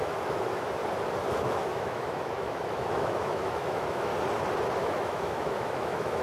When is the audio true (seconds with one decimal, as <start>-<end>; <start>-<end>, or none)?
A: 0.8-1.3; 4.1-4.8